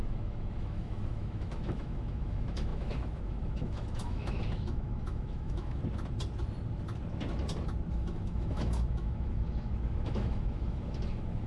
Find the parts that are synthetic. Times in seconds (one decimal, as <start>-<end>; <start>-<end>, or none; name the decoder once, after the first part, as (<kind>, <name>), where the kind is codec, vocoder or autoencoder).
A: 0.0-5.8 (autoencoder, DAC-VAE); 7.9-11.5